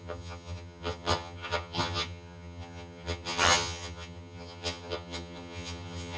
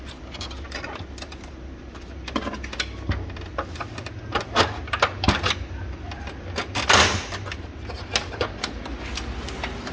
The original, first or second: second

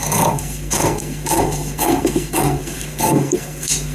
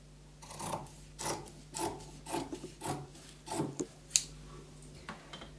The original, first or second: second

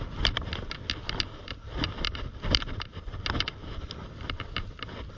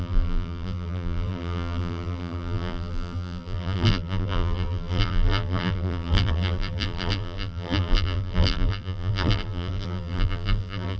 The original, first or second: first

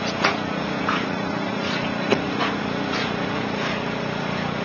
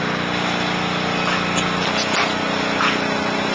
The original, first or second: second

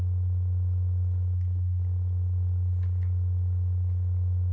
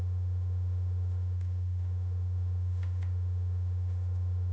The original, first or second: first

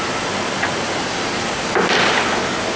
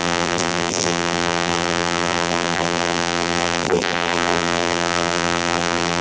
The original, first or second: first